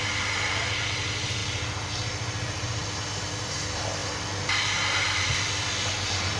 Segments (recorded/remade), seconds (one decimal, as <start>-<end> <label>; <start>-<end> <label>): 0.0-6.4 recorded